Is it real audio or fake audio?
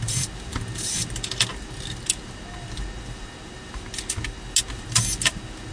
real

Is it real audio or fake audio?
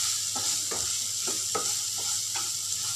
real